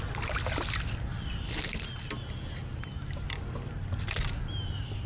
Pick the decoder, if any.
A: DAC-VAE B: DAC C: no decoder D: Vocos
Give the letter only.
C